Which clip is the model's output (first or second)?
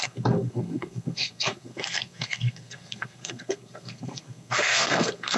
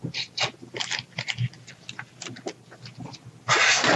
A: first